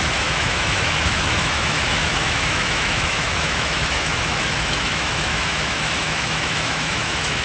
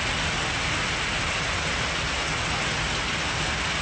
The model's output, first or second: first